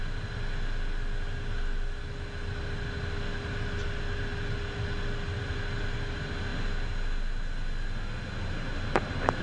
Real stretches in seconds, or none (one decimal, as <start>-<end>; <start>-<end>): 0.0-9.4